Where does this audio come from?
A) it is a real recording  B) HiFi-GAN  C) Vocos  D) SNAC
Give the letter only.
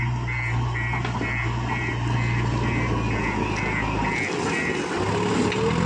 A